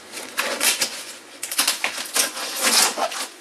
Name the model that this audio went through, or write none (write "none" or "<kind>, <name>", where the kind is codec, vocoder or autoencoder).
vocoder, Vocos